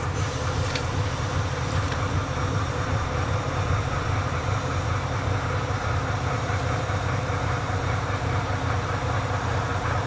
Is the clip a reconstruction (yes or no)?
yes